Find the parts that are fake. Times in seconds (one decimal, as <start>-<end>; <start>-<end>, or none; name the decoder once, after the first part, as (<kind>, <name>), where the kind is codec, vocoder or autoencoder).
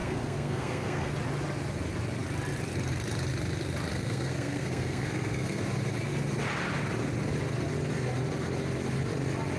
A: 0.0-1.1 (codec, SNAC); 3.9-5.6